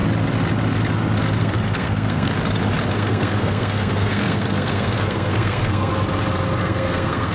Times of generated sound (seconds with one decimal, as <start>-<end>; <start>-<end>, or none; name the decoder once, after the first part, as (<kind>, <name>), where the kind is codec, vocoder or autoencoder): 1.4-2.3 (codec, SNAC); 2.9-5.9; 6.6-7.3